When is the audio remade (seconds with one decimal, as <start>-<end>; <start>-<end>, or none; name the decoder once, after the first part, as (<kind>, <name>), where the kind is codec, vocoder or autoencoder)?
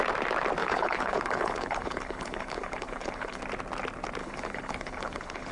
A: 0.6-3.4 (codec, HILCodec); 4.2-5.5